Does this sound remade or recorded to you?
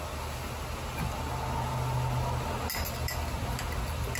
recorded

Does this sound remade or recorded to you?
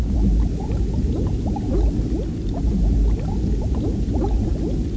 remade